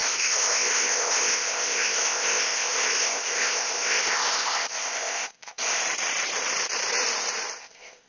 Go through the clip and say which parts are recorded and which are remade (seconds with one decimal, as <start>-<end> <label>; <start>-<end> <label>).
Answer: 0.0-5.8 remade; 5.8-7.6 recorded; 7.6-8.1 remade